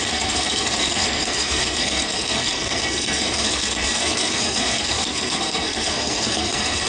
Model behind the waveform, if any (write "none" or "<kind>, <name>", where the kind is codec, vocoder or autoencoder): codec, SNAC